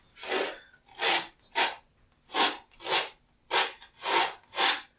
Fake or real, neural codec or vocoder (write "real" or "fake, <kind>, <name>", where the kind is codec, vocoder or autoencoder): real